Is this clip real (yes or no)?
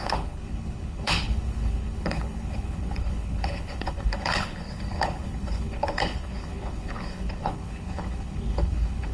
no